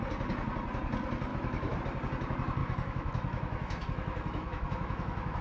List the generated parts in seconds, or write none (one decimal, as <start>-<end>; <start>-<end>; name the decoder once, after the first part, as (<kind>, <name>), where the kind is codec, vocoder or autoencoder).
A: 1.3-1.8 (autoencoder, DAC-VAE); 2.6-5.4